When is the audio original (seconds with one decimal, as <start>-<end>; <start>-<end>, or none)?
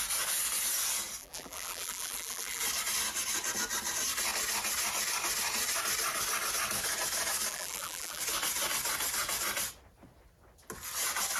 0.0-1.2; 2.6-7.5; 8.2-11.4